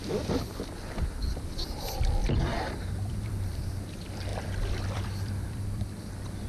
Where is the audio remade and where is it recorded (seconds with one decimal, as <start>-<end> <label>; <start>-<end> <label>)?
0.0-2.2 remade; 2.2-2.7 recorded; 2.7-6.5 remade